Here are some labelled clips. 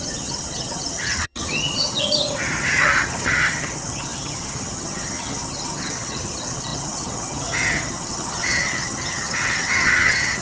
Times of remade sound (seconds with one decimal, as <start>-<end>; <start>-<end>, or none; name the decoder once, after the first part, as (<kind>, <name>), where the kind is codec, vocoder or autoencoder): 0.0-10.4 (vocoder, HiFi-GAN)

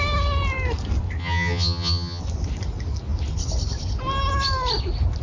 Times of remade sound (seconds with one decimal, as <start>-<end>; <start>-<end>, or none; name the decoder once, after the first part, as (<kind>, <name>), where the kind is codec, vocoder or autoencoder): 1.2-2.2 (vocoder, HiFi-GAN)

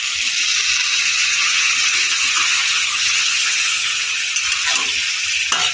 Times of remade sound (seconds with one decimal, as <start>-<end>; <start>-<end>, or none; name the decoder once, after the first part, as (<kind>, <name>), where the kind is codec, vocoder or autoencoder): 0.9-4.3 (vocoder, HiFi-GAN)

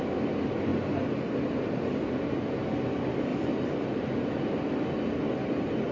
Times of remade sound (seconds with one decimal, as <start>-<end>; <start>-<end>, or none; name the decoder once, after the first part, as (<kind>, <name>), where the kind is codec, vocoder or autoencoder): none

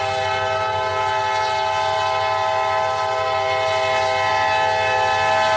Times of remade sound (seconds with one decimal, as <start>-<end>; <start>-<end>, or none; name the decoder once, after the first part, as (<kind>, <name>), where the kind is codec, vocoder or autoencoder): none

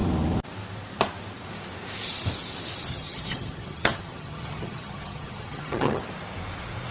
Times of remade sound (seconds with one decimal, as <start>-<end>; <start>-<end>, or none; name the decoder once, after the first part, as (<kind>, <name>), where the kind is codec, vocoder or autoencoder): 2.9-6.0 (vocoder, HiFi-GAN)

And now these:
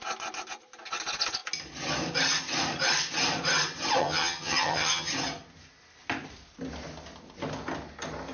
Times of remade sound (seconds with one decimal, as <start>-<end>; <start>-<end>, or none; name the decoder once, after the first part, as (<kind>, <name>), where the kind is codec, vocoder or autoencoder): 4.0-5.1 (vocoder, HiFi-GAN)